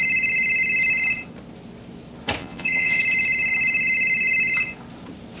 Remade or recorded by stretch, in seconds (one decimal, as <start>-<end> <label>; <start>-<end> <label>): 0.0-2.4 recorded; 2.4-3.0 remade; 3.0-5.4 recorded